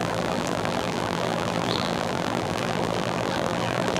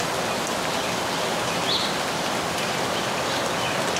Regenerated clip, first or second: first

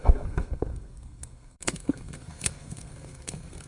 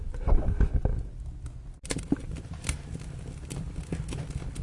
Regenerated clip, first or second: first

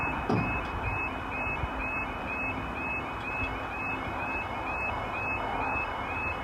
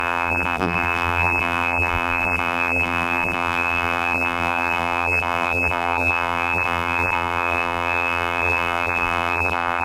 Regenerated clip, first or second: second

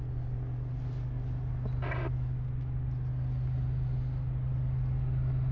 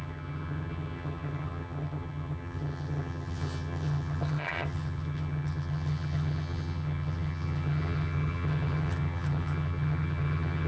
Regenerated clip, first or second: second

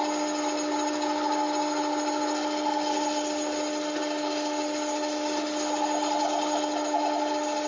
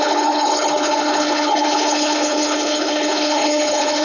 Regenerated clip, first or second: second